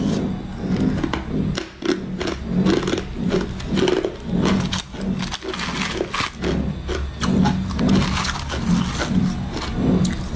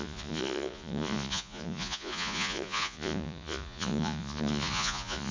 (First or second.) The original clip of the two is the first